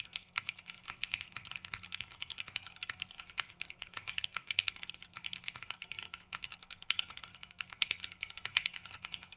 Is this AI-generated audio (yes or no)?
yes